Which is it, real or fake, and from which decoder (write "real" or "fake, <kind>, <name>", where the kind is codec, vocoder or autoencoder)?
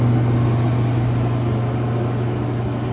real